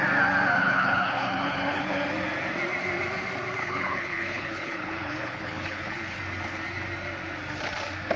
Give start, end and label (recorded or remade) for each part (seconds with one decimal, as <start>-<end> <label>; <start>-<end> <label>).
0.0-0.6 recorded; 0.6-2.0 remade; 2.0-3.6 recorded; 3.6-6.2 remade; 6.2-8.2 recorded